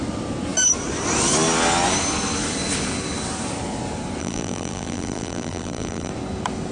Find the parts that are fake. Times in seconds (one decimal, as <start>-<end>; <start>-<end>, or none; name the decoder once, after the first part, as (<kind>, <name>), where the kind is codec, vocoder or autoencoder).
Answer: 4.2-6.1 (vocoder, BigVGAN v2)